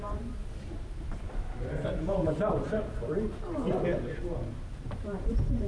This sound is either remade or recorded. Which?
remade